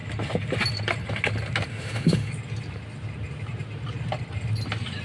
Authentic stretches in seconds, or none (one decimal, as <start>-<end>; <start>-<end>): 0.0-1.7; 2.3-5.0